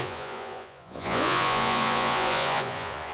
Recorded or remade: remade